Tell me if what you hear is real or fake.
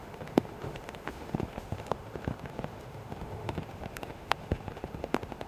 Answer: fake